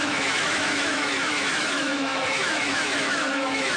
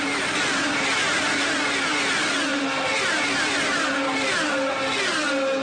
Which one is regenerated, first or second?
first